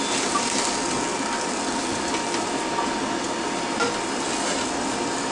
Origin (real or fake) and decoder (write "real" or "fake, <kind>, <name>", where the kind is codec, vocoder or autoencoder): real